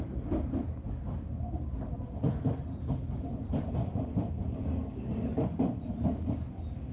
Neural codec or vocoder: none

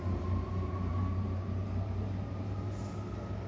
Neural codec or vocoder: none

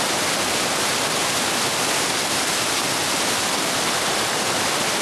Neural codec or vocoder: none